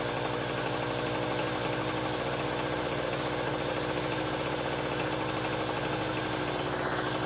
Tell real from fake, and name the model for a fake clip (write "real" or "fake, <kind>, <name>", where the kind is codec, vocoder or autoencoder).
real